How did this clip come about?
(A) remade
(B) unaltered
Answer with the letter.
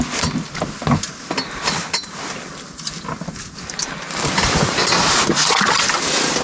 B